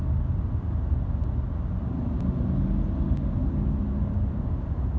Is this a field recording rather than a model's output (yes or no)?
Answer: yes